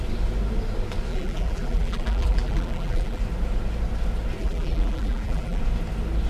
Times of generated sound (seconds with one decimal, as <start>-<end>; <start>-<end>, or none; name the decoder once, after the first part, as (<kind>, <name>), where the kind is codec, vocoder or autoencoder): 1.1-3.2 (vocoder, BigVGAN v2); 4.4-5.6